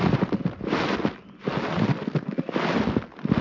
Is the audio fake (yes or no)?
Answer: no